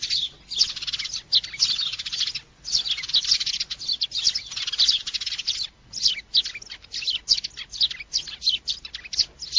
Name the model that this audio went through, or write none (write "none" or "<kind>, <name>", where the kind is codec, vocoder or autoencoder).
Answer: none